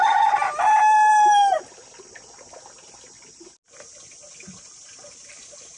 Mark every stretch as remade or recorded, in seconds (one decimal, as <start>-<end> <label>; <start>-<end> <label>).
0.0-5.8 recorded